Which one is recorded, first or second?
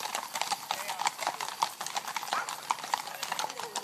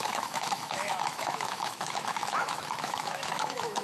first